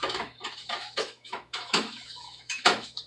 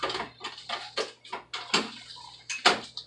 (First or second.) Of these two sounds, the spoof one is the first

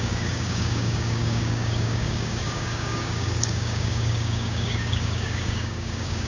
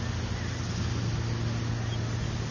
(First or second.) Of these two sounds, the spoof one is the first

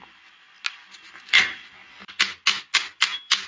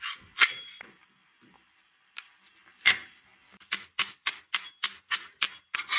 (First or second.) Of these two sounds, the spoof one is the second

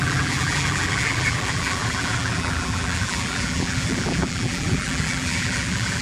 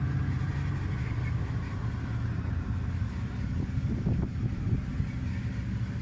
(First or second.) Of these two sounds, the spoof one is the first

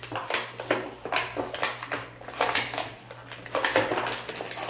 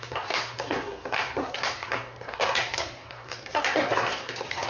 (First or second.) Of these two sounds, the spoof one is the second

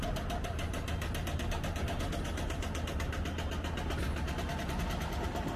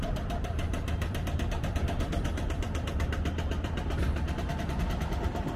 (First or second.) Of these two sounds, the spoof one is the second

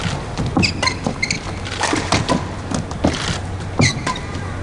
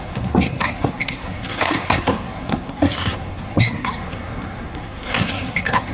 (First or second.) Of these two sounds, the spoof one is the second